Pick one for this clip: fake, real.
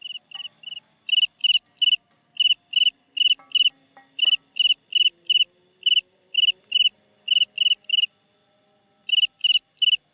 real